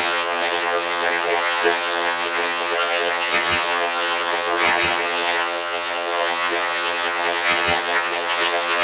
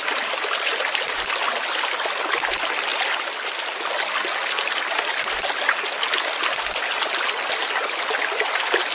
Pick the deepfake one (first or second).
first